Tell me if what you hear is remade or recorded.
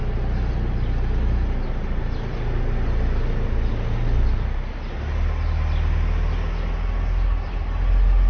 recorded